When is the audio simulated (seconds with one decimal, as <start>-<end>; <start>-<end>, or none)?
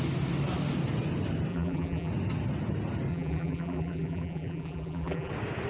1.5-2.1; 3.1-5.3